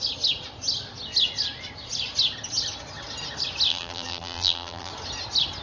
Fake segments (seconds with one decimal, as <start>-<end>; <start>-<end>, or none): 3.7-4.9